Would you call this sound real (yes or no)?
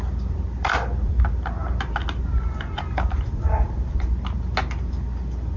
yes